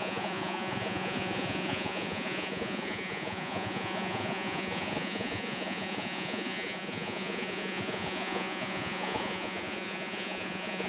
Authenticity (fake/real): fake